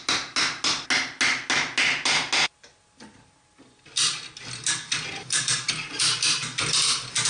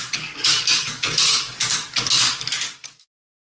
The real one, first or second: first